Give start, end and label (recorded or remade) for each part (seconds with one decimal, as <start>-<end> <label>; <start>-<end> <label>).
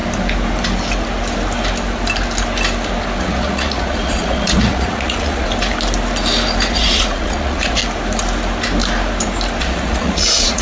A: 0.0-3.2 recorded; 3.2-5.5 remade; 5.5-6.7 recorded; 6.7-7.8 remade; 7.8-9.6 recorded; 9.6-10.6 remade